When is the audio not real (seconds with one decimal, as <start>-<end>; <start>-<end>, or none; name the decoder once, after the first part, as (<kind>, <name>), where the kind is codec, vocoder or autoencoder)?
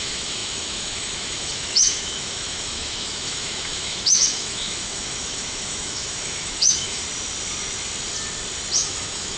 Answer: 0.0-7.0 (autoencoder, DAC-VAE); 8.8-9.4